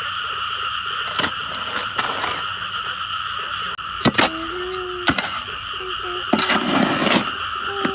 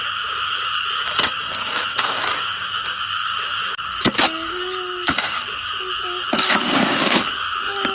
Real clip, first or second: first